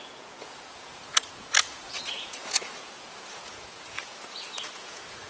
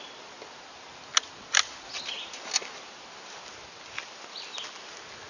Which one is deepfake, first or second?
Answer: first